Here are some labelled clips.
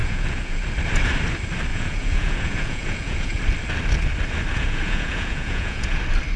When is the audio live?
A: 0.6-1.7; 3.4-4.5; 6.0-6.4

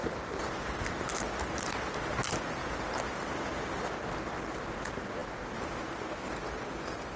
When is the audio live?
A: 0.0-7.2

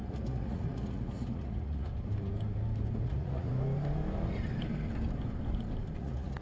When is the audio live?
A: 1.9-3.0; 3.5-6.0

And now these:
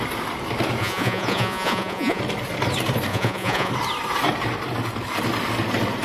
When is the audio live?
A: 0.0-0.8; 2.2-3.1; 3.7-6.0